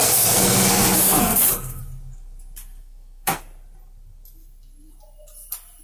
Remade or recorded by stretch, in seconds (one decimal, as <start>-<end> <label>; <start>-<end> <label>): 0.0-1.8 remade; 1.8-2.8 recorded; 2.8-3.4 remade; 3.4-5.8 recorded